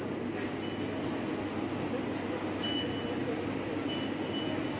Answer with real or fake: real